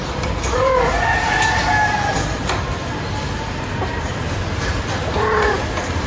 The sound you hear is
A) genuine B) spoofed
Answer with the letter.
A